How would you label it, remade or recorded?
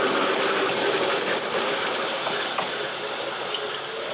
recorded